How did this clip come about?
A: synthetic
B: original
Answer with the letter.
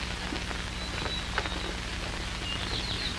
B